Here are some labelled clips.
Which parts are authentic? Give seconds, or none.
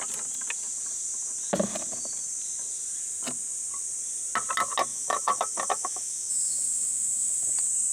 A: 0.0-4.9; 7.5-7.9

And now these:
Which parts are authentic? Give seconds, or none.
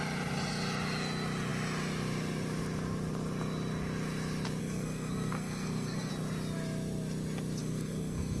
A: 0.0-4.6; 6.1-7.6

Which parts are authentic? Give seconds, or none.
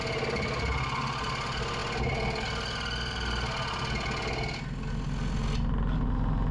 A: 0.0-6.5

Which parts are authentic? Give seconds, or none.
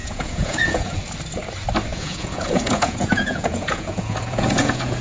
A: 1.0-1.9